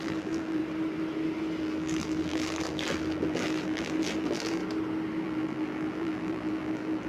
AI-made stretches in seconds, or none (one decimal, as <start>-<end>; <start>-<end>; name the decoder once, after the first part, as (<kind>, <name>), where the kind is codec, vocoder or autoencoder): 0.0-0.6 (vocoder, BigVGAN v2); 1.6-4.6; 5.2-7.1